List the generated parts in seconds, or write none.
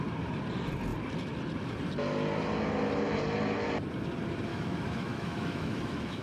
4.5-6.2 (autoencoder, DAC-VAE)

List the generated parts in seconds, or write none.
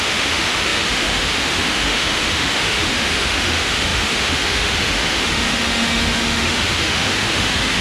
0.0-7.8 (autoencoder, DAC-VAE)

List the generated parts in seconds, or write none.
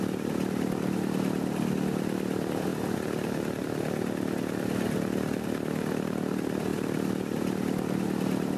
none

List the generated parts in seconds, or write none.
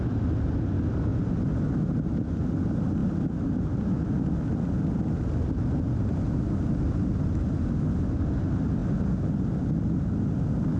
none